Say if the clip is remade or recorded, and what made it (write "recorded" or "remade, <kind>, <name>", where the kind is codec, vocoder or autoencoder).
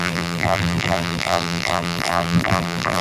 remade, vocoder, BigVGAN v2